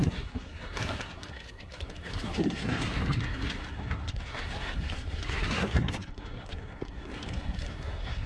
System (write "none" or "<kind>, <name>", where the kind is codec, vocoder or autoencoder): codec, SNAC